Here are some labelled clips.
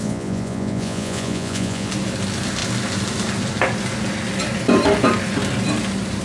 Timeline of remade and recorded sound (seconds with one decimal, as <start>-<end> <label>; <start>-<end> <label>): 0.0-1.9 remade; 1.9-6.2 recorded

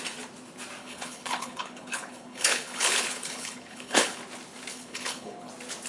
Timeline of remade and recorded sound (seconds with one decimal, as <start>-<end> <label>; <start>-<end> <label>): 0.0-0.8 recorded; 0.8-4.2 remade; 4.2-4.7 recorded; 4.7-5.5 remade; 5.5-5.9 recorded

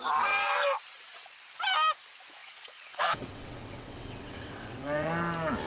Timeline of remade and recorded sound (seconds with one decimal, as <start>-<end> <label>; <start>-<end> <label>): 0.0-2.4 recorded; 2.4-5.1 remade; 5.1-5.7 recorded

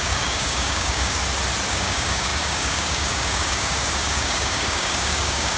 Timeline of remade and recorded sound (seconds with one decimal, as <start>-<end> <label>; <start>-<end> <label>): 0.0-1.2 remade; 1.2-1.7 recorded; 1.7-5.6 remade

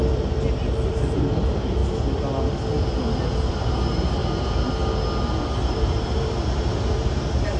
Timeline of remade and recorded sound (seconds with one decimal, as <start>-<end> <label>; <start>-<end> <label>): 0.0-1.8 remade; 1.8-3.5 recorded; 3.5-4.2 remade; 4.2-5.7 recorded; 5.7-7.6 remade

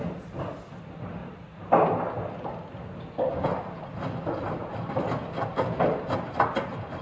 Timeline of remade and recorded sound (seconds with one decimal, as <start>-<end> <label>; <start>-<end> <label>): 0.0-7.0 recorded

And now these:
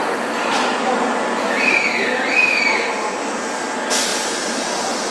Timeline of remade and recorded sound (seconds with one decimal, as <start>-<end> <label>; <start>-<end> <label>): 0.0-5.1 recorded

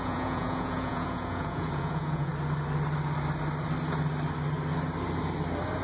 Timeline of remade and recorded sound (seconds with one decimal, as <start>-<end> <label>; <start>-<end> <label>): 0.0-2.3 remade; 2.3-5.8 recorded